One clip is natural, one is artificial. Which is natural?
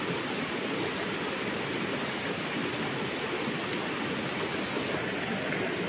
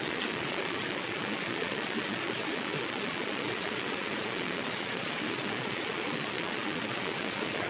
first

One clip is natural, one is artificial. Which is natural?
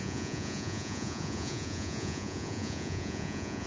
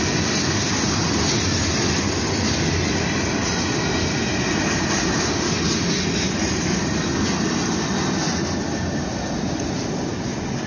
second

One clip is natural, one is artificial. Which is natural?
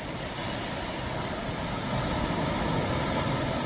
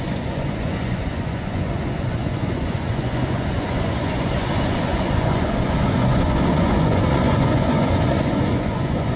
first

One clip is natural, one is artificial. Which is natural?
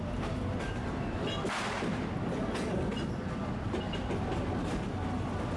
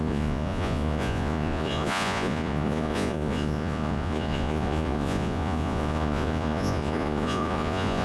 first